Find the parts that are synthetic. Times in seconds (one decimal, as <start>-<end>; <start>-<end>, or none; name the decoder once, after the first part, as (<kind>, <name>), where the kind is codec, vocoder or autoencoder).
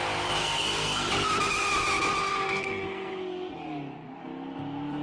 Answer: 0.4-1.1 (codec, SNAC); 2.3-3.1